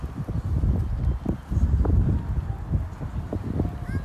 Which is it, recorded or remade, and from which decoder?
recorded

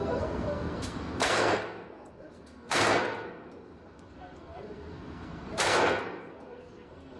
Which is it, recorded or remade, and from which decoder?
remade, codec, SNAC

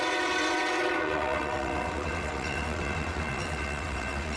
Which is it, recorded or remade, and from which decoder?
remade, vocoder, WaveNeXt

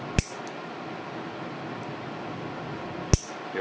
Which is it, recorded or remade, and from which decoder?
recorded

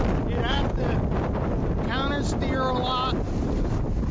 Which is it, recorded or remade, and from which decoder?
recorded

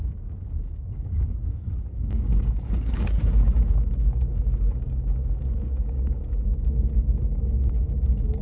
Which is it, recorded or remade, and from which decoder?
remade, codec, DAC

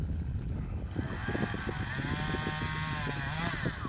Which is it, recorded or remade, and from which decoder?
recorded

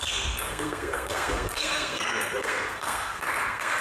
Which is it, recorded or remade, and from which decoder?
remade, codec, SNAC